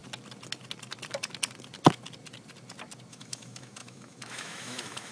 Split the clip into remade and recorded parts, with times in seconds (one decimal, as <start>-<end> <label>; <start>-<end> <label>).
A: 0.0-3.1 recorded; 3.1-5.1 remade